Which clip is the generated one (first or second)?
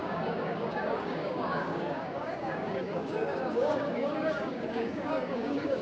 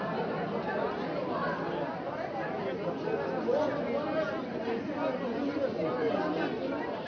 first